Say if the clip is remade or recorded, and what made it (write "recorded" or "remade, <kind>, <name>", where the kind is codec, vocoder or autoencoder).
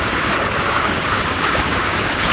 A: remade, codec, DAC